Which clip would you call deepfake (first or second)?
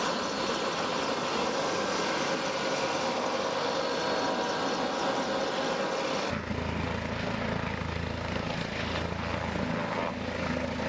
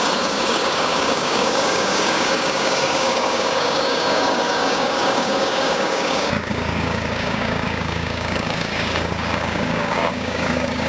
second